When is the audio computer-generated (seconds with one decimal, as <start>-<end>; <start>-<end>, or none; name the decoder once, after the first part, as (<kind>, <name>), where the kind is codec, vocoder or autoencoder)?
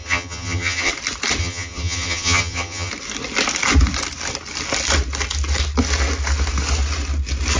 0.0-0.9 (vocoder, HiFi-GAN); 1.4-2.9